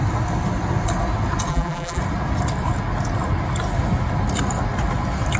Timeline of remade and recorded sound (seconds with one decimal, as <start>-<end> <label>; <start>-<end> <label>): 0.0-1.5 recorded; 1.5-2.0 remade; 2.0-5.4 recorded